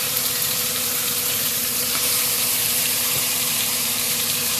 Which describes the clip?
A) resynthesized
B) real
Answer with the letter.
A